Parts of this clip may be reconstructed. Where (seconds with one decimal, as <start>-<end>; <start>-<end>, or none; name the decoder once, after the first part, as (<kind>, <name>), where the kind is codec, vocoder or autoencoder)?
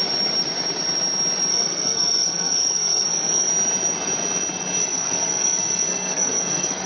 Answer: 1.5-3.5 (codec, SNAC); 4.8-6.9